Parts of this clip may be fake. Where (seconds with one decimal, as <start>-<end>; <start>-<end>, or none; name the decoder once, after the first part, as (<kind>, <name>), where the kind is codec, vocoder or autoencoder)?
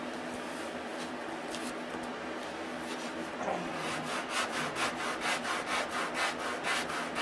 none